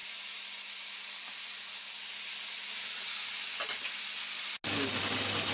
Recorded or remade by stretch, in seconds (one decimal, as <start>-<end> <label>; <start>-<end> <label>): 0.0-5.5 recorded